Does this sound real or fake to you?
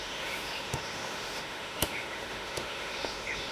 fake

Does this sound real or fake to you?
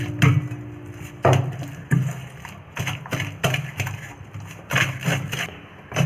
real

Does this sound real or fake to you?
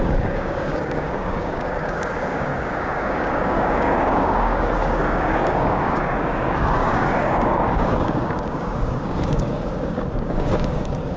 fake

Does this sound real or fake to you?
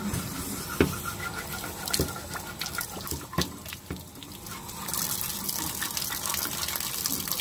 real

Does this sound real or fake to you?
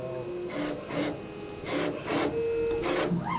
real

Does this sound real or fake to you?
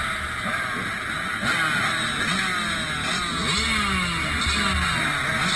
real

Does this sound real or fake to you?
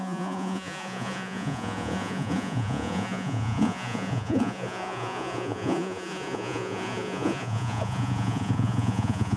fake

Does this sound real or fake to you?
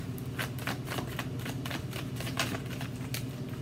real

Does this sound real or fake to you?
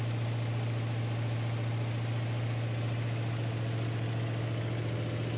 real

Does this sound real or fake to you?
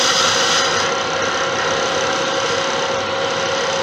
real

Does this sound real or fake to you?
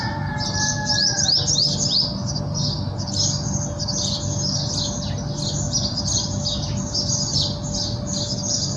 real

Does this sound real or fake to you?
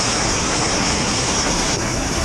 fake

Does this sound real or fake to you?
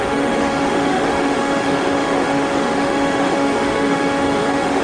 fake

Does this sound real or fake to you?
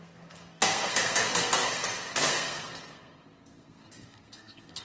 fake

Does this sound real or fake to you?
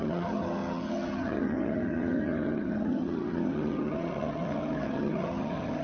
fake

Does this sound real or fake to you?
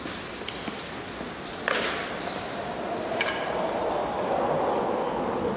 real